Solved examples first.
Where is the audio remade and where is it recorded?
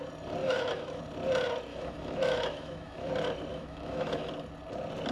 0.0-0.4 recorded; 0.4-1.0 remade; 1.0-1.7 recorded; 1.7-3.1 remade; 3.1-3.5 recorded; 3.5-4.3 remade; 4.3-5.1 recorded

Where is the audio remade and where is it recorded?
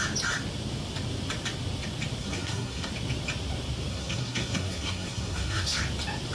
0.0-2.2 recorded; 2.2-2.9 remade; 2.9-3.9 recorded; 3.9-5.8 remade; 5.8-6.3 recorded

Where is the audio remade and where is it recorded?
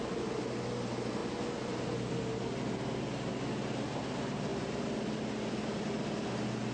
0.0-6.7 recorded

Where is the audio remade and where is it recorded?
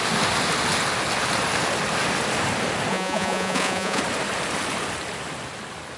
0.0-2.9 recorded; 2.9-4.0 remade; 4.0-6.0 recorded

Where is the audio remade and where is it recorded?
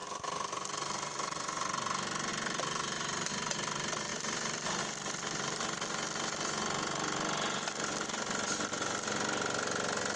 0.0-10.2 remade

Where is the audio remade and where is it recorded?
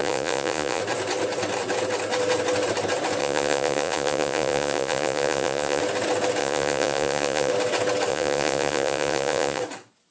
0.0-0.8 remade; 0.8-3.2 recorded; 3.2-5.8 remade; 5.8-6.4 recorded; 6.4-7.5 remade; 7.5-8.1 recorded; 8.1-9.6 remade; 9.6-10.1 recorded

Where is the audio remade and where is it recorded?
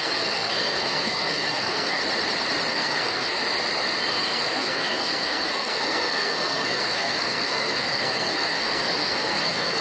0.0-2.0 remade; 2.0-2.7 recorded; 2.7-3.4 remade; 3.4-4.1 recorded; 4.1-9.8 remade